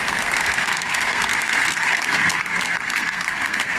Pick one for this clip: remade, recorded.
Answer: remade